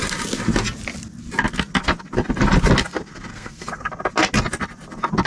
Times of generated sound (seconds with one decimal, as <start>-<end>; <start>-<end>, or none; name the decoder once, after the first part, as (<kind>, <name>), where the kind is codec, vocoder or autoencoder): 3.3-3.9 (codec, SNAC)